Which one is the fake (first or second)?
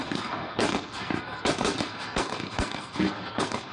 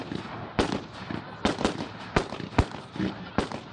first